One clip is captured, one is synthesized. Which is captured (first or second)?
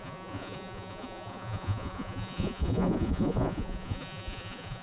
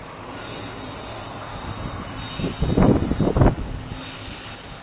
second